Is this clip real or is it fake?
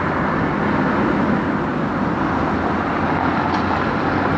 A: real